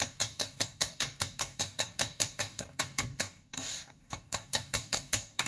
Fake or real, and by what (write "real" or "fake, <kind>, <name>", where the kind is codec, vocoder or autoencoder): fake, codec, DAC